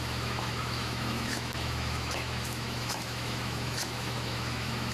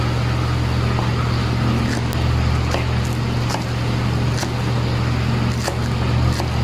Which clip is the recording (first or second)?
second